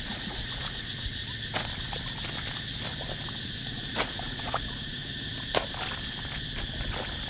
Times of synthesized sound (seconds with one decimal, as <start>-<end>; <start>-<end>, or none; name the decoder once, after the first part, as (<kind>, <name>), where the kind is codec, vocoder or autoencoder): 0.0-1.2 (vocoder, Vocos); 3.4-5.0